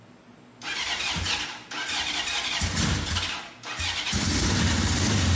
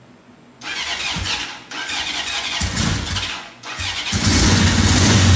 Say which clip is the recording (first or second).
first